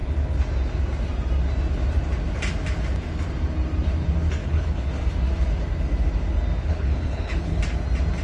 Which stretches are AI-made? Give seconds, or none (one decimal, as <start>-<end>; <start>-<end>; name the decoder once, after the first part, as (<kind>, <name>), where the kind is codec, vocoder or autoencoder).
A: 4.4-5.0 (codec, HILCodec); 6.6-7.6